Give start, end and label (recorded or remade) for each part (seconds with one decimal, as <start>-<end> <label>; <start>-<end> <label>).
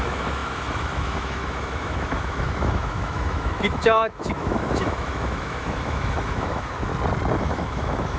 0.0-6.9 remade; 6.9-7.4 recorded; 7.4-8.2 remade